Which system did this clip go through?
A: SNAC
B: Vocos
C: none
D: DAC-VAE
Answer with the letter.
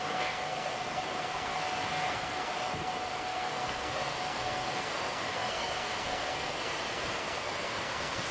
A